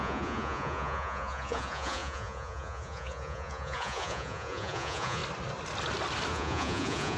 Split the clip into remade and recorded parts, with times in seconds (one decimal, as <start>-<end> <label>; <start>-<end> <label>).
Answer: 0.0-5.2 remade; 5.2-6.3 recorded; 6.3-7.2 remade